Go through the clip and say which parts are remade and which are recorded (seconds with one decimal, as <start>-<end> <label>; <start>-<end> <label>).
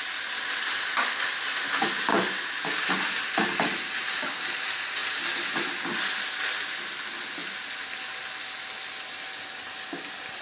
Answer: 0.0-10.4 recorded